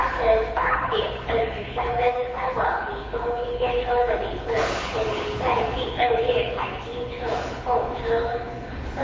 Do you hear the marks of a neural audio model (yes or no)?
yes